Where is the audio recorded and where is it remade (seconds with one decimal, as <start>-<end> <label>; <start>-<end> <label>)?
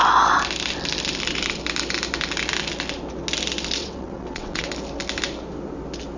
0.0-3.8 recorded; 3.8-4.7 remade; 4.7-6.2 recorded